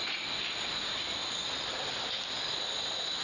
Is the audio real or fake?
real